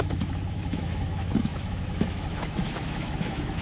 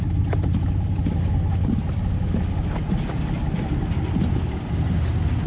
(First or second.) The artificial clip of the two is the first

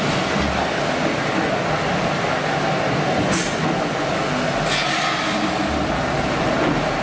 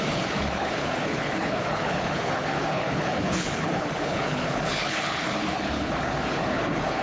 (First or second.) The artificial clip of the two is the second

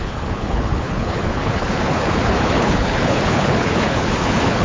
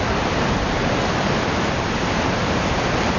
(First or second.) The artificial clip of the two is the first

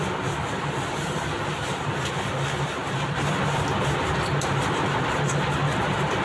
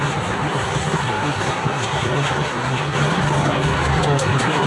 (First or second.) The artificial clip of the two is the second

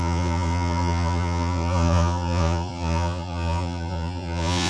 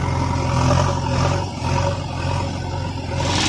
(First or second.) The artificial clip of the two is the first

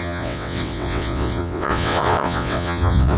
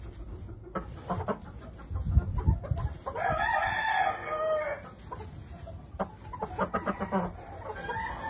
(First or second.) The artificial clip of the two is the first